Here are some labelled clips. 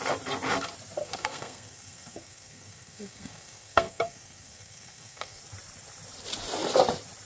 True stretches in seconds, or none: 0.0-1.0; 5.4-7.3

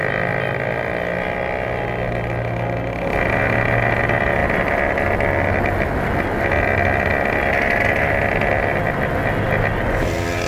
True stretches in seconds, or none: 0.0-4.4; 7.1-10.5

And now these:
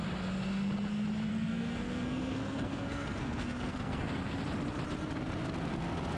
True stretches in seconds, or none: 0.0-1.3; 4.4-6.2

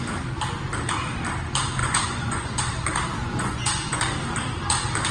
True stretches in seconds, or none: 0.0-1.8; 2.6-3.2; 4.0-5.1

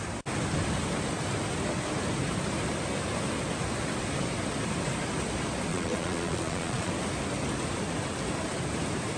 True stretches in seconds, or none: 0.0-5.7; 6.9-9.2

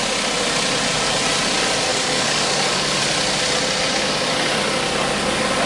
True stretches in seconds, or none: 0.0-1.9; 3.0-5.7